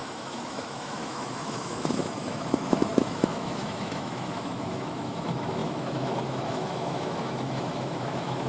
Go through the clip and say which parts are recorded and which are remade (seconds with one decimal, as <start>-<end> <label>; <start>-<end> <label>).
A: 0.0-8.5 remade